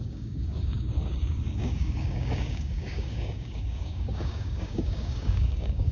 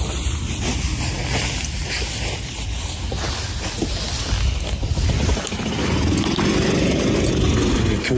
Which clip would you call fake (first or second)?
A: first